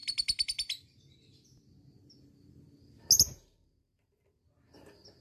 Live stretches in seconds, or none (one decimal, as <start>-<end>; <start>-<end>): 0.0-5.2

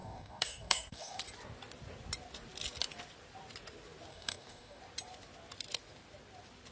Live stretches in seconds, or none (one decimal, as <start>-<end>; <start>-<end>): 1.2-4.1; 4.8-6.7

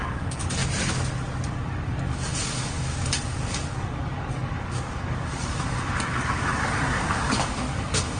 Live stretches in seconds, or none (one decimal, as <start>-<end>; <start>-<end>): 0.6-1.5

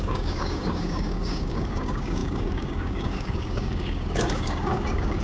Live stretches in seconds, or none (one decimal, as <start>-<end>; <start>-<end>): none

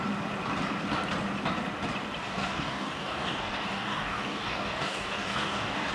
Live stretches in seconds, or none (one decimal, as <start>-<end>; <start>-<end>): 0.0-2.2

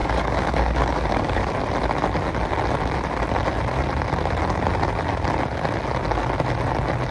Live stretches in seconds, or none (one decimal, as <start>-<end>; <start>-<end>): 1.5-7.1

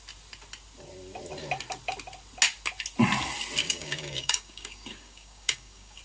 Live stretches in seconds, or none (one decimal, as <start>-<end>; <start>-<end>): 0.0-3.6